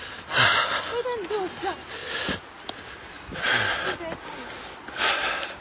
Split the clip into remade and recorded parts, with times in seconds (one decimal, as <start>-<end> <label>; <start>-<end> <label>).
0.0-5.6 recorded